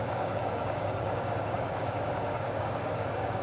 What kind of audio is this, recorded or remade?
remade